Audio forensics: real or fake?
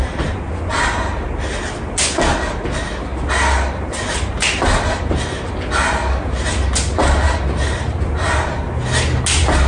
real